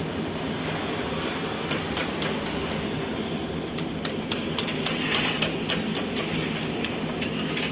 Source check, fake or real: real